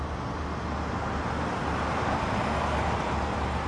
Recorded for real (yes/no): yes